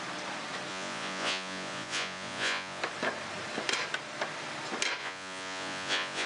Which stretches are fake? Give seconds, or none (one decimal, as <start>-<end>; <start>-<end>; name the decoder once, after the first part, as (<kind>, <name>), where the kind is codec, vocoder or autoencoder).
0.7-2.8 (vocoder, Vocos); 5.0-6.3